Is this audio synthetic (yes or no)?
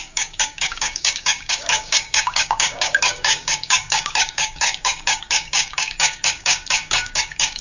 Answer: yes